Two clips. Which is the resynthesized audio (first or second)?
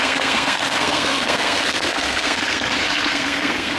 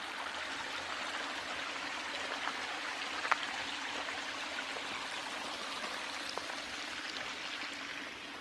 first